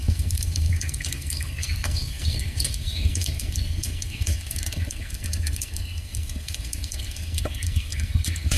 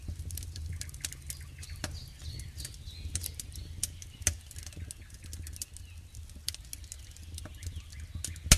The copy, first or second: first